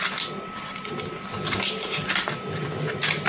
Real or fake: real